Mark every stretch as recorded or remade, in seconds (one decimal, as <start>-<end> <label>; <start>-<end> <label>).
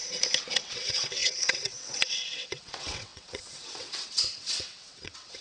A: 0.0-0.5 recorded; 0.5-5.4 remade